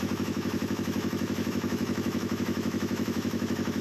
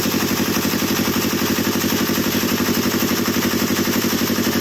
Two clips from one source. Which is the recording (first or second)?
second